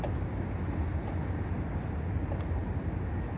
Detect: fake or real real